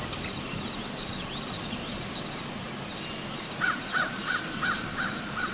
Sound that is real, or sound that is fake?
real